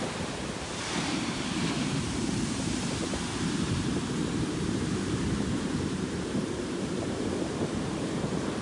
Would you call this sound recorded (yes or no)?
no